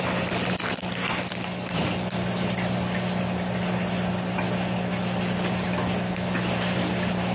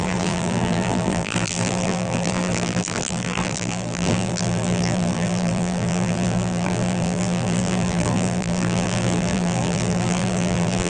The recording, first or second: first